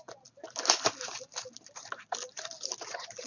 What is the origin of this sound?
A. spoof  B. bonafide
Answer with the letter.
B